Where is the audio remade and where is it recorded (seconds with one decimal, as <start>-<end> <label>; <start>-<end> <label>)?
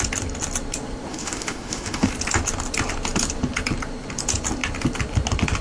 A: 0.0-1.1 recorded; 1.1-2.1 remade; 2.1-5.6 recorded